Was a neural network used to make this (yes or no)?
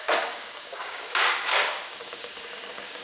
yes